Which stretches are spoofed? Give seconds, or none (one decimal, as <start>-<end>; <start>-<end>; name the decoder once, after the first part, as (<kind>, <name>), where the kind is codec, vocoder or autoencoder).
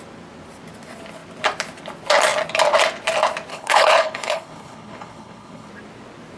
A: 3.5-5.7 (codec, HILCodec)